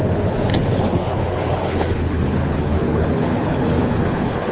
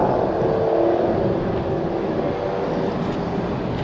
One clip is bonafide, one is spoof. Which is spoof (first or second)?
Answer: first